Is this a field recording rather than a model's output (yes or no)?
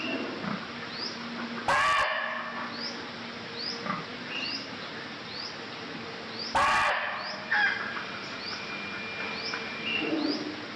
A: yes